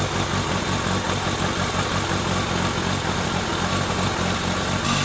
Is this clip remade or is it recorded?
recorded